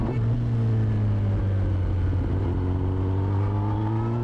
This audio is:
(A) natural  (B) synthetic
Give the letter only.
A